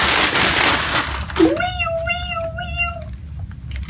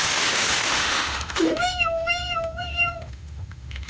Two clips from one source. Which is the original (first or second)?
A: first